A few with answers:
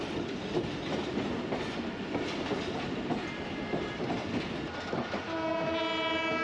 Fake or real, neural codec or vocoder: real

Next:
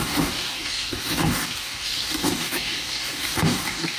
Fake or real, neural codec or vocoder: fake, codec, DAC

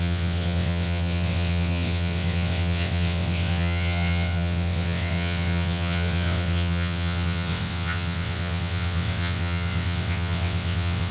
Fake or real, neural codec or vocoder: fake, vocoder, WaveNeXt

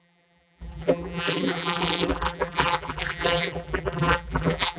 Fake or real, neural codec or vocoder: fake, vocoder, BigVGAN v2